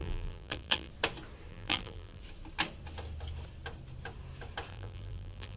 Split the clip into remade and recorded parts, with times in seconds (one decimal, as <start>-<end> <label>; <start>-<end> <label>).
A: 0.0-0.9 remade; 0.9-1.5 recorded; 1.5-2.2 remade; 2.2-4.7 recorded; 4.7-5.6 remade